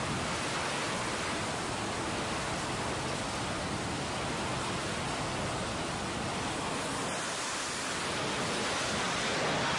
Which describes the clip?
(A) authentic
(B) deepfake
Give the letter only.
A